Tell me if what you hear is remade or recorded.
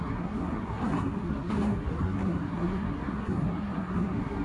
remade